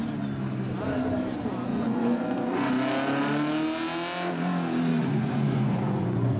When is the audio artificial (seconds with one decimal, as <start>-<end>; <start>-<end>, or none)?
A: 1.7-2.7; 4.9-6.4